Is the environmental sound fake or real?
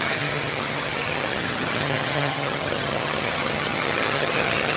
fake